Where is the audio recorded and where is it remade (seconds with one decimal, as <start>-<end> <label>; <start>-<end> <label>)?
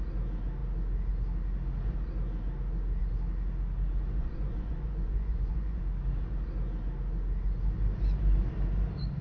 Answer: 0.0-4.2 recorded; 4.2-5.8 remade; 5.8-9.2 recorded